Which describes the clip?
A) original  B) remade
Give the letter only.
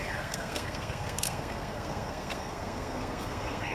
B